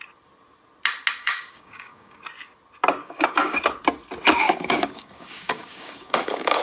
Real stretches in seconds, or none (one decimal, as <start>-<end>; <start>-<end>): 0.0-1.2; 2.2-3.0; 3.6-4.4